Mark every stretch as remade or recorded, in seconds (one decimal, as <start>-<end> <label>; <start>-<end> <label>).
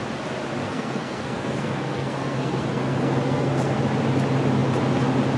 0.0-0.6 recorded; 0.6-3.8 remade; 3.8-5.4 recorded